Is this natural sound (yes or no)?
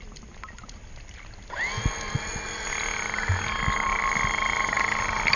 yes